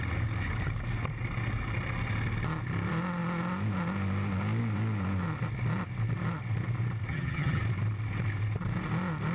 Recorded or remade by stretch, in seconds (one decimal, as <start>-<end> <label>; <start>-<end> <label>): 0.0-7.1 recorded; 7.1-7.6 remade; 7.6-9.3 recorded